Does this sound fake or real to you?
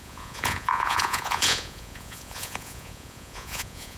fake